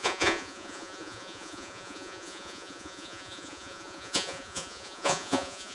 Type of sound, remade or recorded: remade